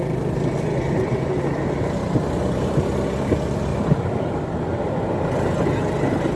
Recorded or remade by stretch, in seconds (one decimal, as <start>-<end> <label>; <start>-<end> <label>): 0.0-2.0 recorded; 2.0-2.8 remade; 2.8-3.7 recorded; 3.7-4.9 remade; 4.9-6.4 recorded